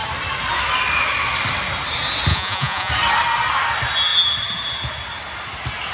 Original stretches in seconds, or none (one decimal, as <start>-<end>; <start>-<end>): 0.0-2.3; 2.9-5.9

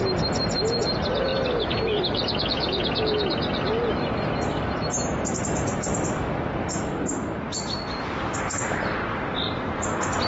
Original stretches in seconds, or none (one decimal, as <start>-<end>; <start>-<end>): 0.0-10.3

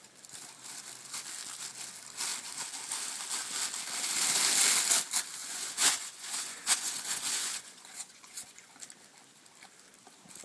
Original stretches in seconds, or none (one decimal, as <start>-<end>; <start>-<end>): 0.0-5.4; 8.7-10.4